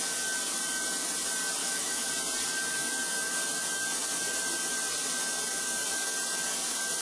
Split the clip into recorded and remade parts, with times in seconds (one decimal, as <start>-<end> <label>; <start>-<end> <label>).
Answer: 0.0-1.6 recorded; 1.6-2.1 remade; 2.1-7.0 recorded